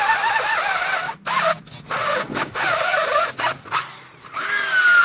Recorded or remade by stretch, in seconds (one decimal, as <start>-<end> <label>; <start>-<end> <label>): 0.0-5.0 recorded